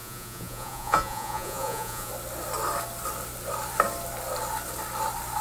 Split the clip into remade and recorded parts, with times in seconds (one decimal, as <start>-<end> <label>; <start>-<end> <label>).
0.0-2.1 remade; 2.1-5.4 recorded